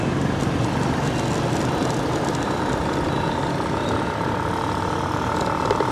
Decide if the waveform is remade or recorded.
recorded